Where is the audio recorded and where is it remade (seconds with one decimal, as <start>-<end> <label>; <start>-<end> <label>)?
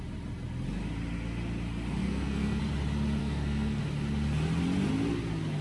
0.0-2.0 recorded; 2.0-2.6 remade; 2.6-3.2 recorded; 3.2-3.8 remade; 3.8-5.6 recorded